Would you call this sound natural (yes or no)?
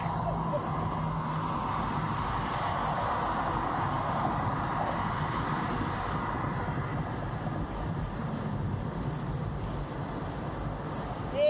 yes